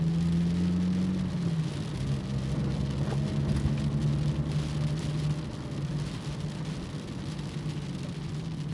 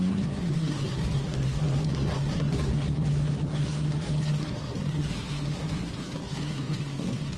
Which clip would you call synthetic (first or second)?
second